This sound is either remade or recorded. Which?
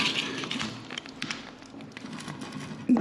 recorded